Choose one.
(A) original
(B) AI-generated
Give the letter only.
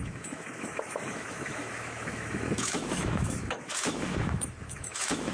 B